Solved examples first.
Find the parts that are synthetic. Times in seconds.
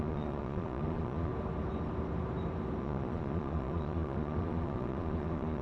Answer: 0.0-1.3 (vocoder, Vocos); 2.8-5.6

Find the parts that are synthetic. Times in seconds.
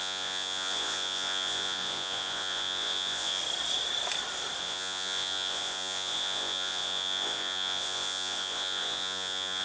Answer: 0.0-3.4 (vocoder, Vocos); 4.6-9.6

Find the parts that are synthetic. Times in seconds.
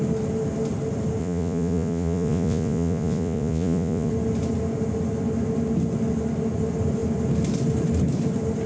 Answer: 1.2-4.1 (vocoder, Vocos)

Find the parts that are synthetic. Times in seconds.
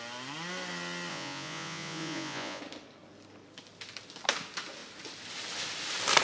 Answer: 1.1-2.6 (vocoder, Vocos)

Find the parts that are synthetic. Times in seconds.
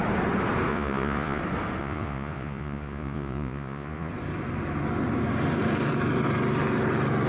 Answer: 0.7-1.4 (vocoder, Vocos); 1.8-4.1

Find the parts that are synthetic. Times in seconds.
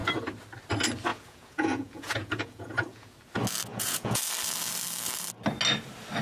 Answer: 1.1-3.1 (vocoder, Vocos); 3.7-4.2